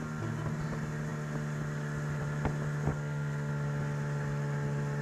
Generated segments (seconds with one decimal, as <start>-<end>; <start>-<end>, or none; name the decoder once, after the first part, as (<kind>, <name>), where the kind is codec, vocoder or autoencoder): 2.9-3.5 (codec, SNAC)